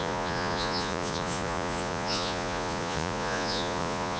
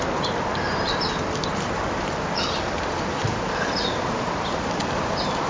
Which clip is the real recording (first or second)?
second